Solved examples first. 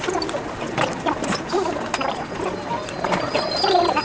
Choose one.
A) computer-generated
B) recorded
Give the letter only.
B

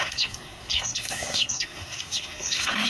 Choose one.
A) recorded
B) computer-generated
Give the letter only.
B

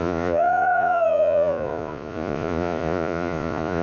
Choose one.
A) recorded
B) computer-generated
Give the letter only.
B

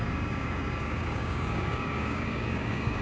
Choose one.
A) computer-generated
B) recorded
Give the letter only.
A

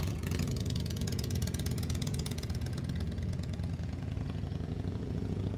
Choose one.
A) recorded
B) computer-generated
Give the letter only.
B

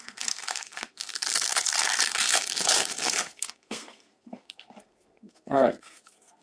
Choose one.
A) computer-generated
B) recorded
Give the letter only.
A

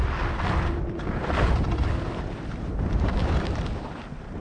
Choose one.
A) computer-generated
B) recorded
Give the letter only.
B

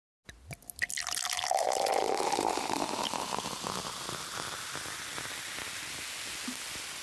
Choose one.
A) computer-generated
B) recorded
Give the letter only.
B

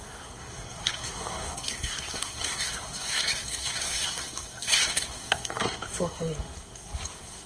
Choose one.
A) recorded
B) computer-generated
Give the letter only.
B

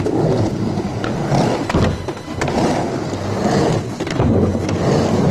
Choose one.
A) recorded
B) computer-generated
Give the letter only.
A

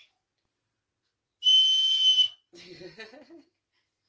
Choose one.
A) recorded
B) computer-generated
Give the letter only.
A